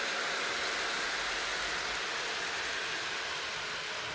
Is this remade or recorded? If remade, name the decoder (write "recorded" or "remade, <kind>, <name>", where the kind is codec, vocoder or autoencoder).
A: recorded